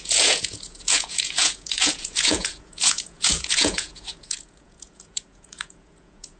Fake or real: fake